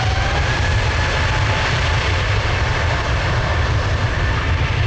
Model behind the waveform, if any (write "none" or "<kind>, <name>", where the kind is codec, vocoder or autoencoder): vocoder, BigVGAN v2